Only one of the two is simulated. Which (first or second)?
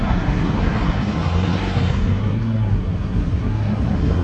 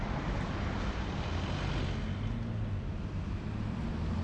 first